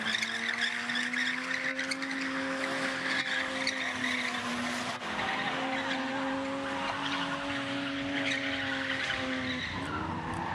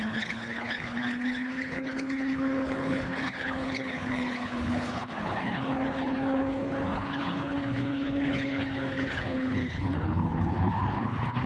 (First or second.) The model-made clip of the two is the second